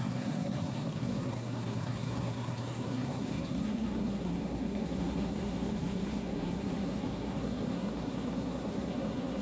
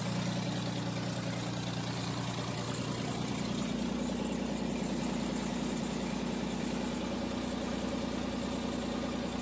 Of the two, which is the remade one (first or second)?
first